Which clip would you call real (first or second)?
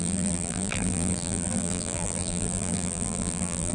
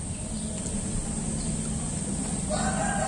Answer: second